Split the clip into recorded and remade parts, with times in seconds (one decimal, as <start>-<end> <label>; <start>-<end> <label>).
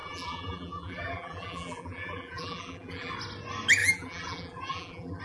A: 0.0-3.1 remade; 3.1-3.8 recorded; 3.8-5.2 remade